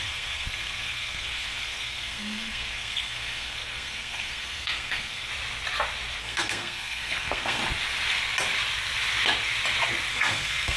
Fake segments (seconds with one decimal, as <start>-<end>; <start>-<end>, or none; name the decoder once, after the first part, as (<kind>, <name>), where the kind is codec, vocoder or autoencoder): 0.0-5.3 (codec, SNAC); 6.2-7.6; 10.1-10.8